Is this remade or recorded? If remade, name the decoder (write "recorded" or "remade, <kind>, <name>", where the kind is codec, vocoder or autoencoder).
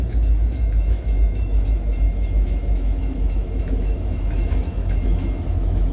remade, autoencoder, DAC-VAE